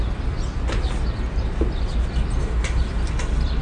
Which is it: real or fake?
real